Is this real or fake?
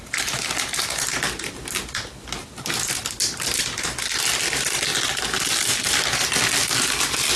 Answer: real